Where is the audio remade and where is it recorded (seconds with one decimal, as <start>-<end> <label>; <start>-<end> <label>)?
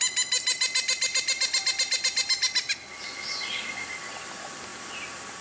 0.0-5.4 recorded